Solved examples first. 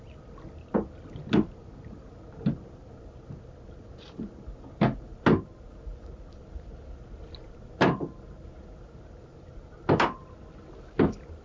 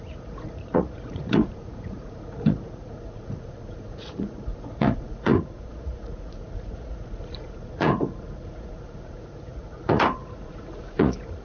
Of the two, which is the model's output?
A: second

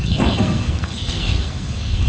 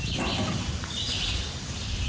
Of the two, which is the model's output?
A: first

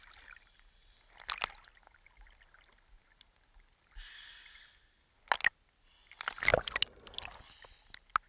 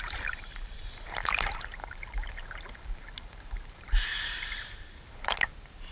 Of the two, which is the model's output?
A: second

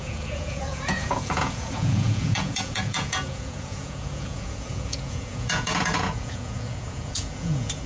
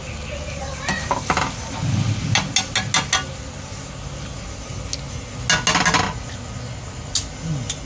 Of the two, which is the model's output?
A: first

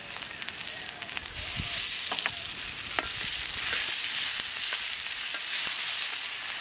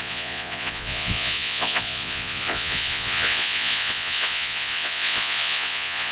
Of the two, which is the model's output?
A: second